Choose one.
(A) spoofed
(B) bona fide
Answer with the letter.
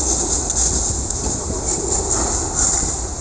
B